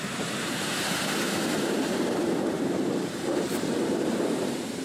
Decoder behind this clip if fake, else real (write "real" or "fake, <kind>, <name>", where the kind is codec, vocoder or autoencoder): fake, vocoder, BigVGAN v2